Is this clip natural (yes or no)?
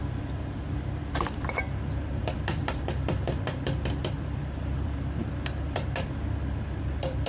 no